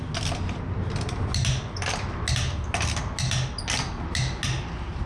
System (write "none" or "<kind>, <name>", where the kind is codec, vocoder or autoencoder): none